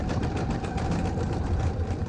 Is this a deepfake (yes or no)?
yes